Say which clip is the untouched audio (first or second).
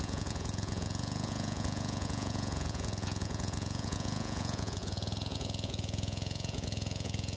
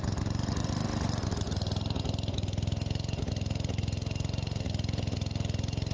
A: second